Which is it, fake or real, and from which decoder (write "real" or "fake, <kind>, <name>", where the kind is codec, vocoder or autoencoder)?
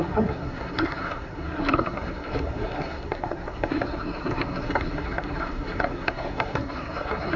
fake, codec, SNAC